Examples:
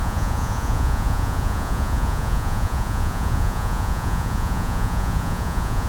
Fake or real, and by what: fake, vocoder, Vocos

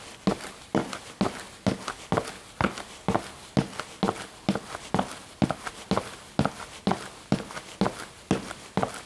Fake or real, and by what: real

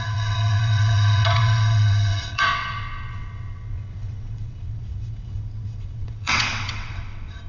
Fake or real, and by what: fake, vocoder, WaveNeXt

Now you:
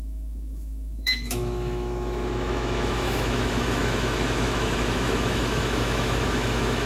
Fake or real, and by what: fake, autoencoder, DAC-VAE